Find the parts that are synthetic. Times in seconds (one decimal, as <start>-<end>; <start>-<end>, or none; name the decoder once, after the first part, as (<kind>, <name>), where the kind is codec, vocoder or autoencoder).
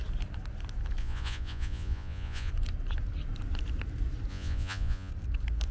1.0-2.5 (vocoder, Vocos); 4.3-5.1